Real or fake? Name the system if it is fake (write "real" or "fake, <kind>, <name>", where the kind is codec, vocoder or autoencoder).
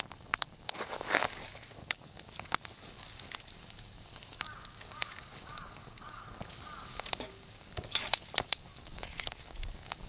fake, codec, DAC